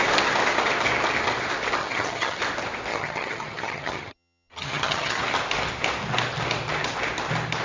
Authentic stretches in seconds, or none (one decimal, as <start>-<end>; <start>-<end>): 0.0-1.8; 2.4-2.9; 5.2-7.6